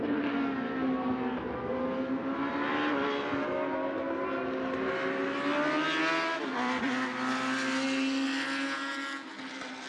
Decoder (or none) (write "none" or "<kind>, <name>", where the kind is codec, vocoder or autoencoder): none